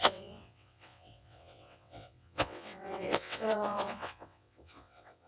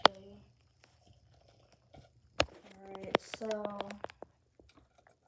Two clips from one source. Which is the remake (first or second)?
first